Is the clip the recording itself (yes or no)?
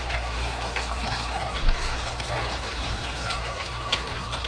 no